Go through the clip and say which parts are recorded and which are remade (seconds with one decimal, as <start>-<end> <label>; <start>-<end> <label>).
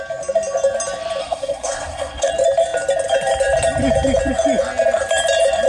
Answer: 0.0-1.2 recorded; 1.2-2.3 remade; 2.3-5.7 recorded